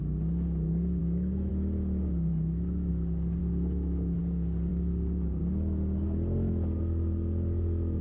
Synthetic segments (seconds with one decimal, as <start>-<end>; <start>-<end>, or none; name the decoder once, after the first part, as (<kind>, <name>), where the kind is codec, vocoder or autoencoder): 1.0-1.5 (autoencoder, DAC-VAE); 2.3-2.9; 3.4-4.2